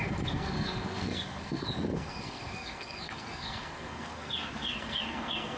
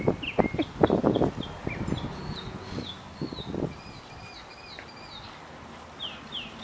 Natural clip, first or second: second